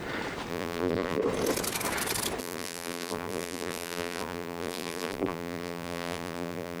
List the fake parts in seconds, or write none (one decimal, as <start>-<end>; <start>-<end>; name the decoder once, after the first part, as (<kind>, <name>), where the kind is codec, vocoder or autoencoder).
0.5-1.2 (vocoder, BigVGAN v2); 2.4-6.8